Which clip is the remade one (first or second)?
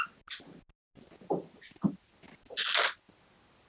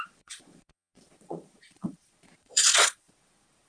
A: second